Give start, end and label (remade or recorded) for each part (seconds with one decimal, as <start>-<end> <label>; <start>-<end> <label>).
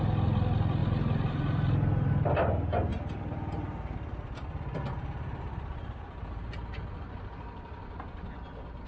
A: 0.0-0.8 recorded; 0.8-2.3 remade; 2.3-2.9 recorded; 2.9-6.4 remade; 6.4-8.9 recorded